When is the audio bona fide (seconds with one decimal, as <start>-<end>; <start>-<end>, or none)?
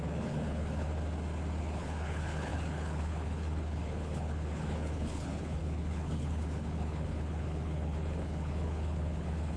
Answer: 0.9-1.6